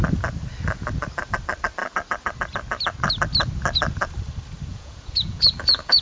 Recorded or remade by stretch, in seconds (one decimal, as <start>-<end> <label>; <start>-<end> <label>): 0.0-4.7 recorded; 4.7-6.0 remade